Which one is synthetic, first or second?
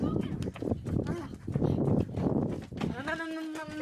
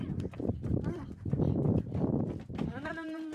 second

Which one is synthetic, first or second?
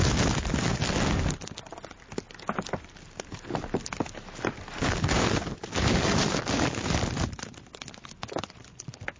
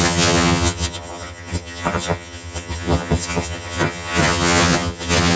second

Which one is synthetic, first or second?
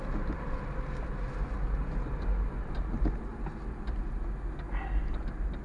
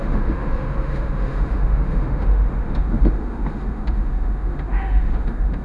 second